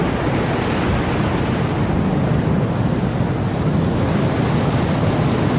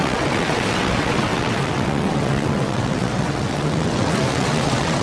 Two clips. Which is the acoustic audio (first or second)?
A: first